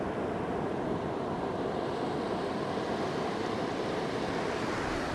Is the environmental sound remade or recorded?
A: recorded